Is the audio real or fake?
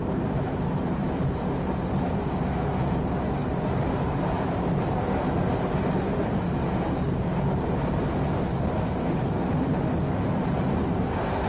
real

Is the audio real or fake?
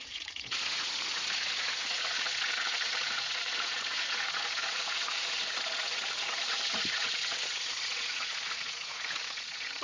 fake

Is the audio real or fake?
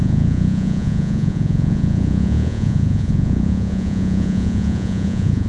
fake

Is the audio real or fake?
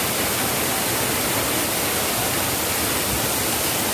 real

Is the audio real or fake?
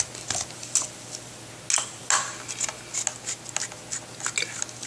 real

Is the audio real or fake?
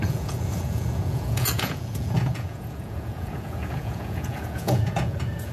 fake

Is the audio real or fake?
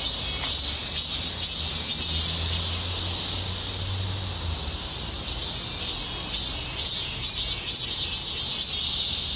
real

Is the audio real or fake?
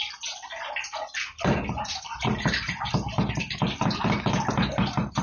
real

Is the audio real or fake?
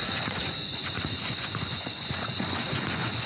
fake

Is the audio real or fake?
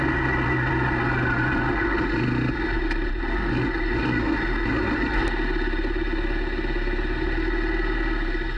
real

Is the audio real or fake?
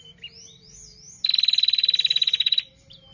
real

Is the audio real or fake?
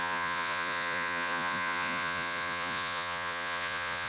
fake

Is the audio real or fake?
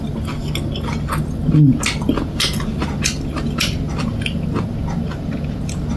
real